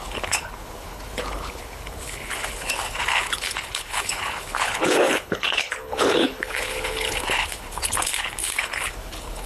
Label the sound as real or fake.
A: fake